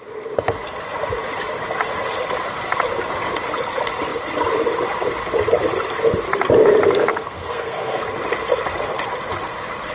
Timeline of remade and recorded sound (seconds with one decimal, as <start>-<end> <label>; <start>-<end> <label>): 0.0-7.1 recorded; 7.1-8.0 remade; 8.0-9.9 recorded